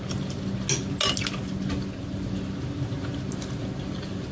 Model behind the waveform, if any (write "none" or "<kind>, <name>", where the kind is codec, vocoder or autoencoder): none